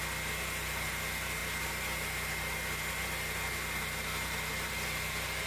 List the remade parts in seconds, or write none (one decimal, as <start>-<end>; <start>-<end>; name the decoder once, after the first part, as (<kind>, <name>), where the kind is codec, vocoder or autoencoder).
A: none